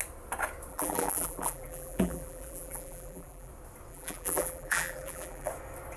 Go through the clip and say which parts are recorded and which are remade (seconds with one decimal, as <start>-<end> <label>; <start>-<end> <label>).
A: 0.0-0.7 recorded; 0.7-3.5 remade; 3.5-3.9 recorded; 3.9-5.5 remade; 5.5-6.0 recorded